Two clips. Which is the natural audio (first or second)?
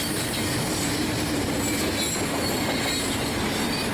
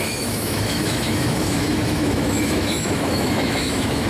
first